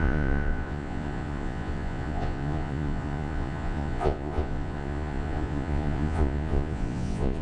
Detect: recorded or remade remade